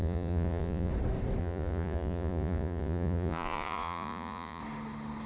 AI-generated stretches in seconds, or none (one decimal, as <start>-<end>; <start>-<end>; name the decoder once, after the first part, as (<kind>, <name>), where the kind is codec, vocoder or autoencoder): 0.0-0.9 (vocoder, Vocos); 1.4-4.6